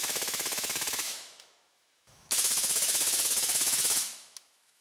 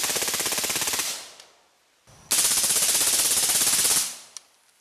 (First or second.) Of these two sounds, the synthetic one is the first